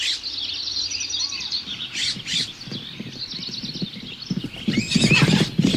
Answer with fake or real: real